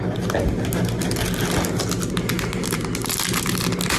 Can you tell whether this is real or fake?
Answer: real